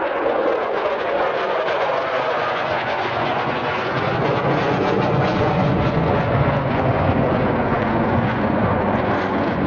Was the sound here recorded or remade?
remade